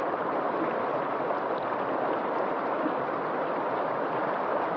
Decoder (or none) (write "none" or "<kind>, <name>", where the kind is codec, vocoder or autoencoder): none